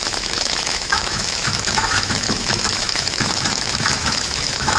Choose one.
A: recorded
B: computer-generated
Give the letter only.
B